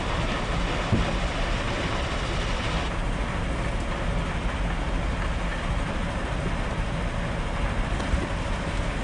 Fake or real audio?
real